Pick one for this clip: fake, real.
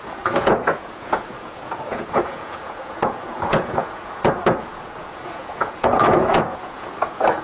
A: fake